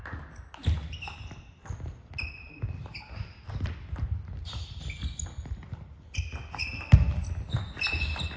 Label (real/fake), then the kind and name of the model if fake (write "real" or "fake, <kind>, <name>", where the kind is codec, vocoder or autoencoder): real